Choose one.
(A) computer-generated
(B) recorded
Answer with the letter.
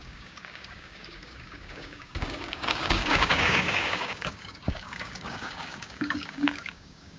A